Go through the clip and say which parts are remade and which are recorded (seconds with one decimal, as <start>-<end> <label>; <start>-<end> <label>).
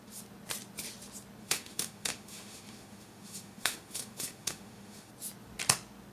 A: 0.0-1.4 recorded; 1.4-5.1 remade; 5.1-6.1 recorded